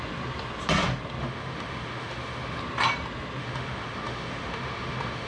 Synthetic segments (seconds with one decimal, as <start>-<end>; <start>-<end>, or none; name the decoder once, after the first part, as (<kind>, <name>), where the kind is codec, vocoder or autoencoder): 1.2-2.6 (autoencoder, DAC-VAE); 3.4-5.3